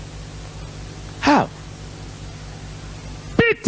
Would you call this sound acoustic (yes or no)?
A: yes